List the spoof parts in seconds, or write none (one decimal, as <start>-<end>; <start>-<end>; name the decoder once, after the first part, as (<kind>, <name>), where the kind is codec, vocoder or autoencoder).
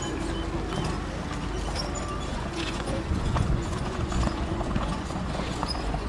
2.3-6.1 (vocoder, Vocos)